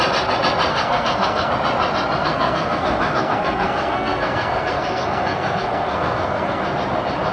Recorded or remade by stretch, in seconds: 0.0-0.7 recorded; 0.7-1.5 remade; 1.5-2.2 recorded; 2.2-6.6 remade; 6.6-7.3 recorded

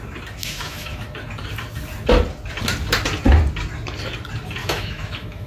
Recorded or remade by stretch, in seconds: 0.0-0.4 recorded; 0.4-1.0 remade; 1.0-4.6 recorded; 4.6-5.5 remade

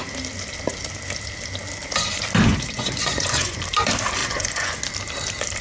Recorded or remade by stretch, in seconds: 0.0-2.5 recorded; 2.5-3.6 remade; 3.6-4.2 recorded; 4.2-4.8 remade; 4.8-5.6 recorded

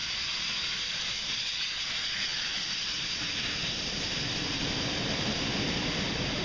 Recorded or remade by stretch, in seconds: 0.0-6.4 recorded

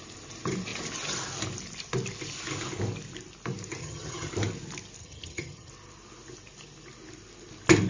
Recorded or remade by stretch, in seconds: 0.0-3.8 recorded; 3.8-4.3 remade; 4.3-5.0 recorded; 5.0-5.7 remade; 5.7-7.9 recorded

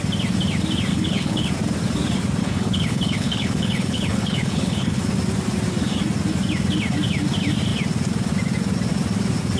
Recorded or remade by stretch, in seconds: 0.0-0.9 recorded; 0.9-1.5 remade; 1.5-2.4 recorded; 2.4-5.0 remade; 5.0-9.6 recorded

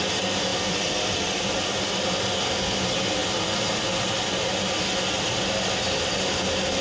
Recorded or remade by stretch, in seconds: 0.0-0.5 recorded; 0.5-1.8 remade; 1.8-6.8 recorded

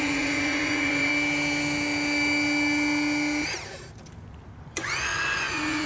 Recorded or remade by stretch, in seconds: 0.0-1.1 remade; 1.1-4.6 recorded; 4.6-5.9 remade